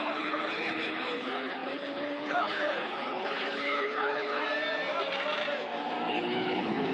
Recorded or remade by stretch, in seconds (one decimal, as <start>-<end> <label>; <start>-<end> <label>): 0.0-4.4 remade; 4.4-6.1 recorded; 6.1-6.9 remade